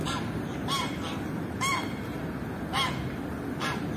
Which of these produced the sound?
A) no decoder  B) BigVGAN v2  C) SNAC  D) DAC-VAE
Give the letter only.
A